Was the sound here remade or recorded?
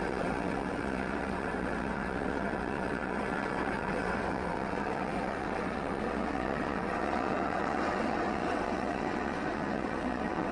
remade